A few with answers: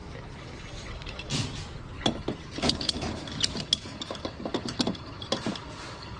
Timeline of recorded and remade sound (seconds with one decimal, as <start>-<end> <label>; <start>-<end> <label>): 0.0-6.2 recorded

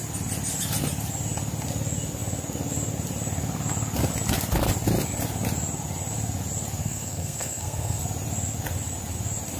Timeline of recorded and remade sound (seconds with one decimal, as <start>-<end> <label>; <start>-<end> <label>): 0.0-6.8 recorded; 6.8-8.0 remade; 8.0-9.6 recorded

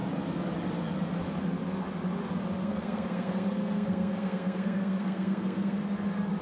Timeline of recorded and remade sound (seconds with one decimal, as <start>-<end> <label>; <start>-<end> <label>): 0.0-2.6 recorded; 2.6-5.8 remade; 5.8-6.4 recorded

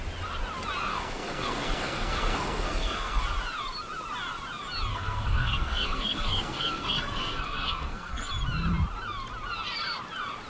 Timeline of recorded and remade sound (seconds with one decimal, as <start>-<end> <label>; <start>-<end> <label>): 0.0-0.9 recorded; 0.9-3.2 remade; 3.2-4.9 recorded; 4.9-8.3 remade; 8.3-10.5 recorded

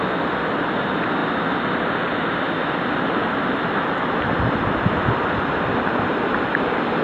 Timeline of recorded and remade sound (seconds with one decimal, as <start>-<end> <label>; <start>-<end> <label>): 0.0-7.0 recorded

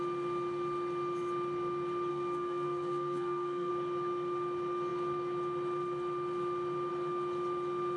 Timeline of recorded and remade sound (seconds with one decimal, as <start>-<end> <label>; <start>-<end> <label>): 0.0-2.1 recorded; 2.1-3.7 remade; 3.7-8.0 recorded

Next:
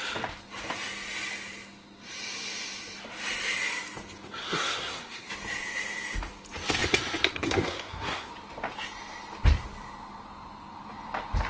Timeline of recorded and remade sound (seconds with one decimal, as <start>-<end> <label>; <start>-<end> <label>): 0.0-4.4 recorded; 4.4-5.3 remade; 5.3-7.3 recorded; 7.3-8.3 remade; 8.3-11.5 recorded

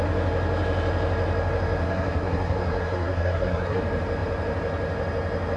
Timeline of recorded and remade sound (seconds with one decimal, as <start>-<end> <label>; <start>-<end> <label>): 0.0-1.8 recorded; 1.8-3.8 remade; 3.8-5.6 recorded